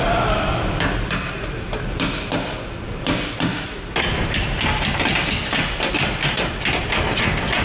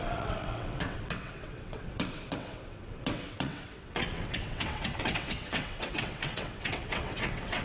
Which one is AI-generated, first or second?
second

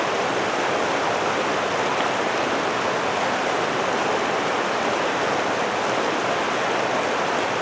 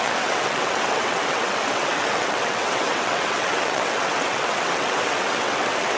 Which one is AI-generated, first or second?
second